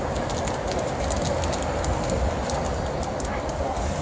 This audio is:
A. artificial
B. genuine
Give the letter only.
B